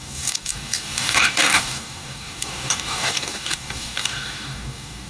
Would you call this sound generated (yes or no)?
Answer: yes